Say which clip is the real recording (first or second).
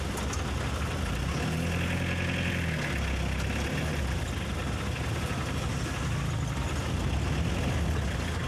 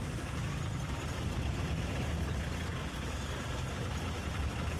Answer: first